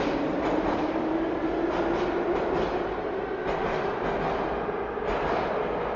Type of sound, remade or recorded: recorded